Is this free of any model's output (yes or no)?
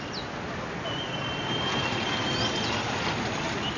yes